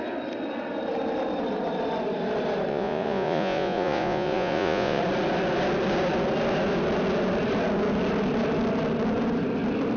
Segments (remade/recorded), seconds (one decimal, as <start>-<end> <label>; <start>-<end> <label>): 0.0-2.7 recorded; 2.7-5.0 remade; 5.0-10.0 recorded